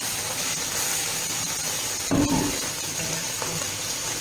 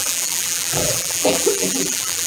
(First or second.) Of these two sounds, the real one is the first